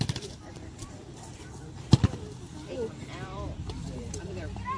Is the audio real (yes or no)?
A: no